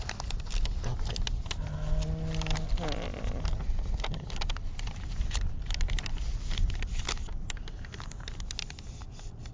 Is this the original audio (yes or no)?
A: yes